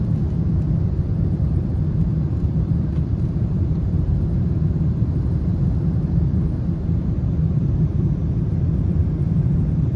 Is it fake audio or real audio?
fake